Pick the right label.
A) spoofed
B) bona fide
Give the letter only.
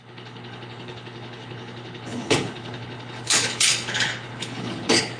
A